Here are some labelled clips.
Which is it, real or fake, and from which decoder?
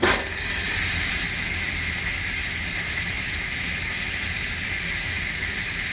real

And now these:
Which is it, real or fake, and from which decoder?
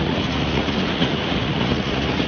fake, vocoder, Vocos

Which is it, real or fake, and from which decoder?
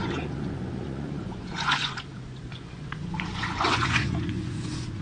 fake, vocoder, Vocos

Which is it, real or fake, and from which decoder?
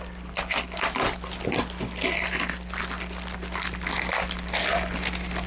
real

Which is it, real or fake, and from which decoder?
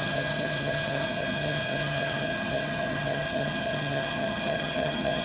fake, vocoder, HiFi-GAN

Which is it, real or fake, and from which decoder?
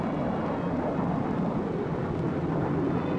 real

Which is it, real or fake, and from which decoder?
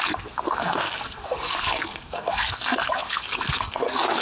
fake, codec, SNAC